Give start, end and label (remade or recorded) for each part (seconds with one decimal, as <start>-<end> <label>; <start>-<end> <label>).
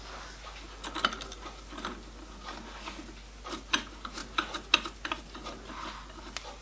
0.0-6.6 recorded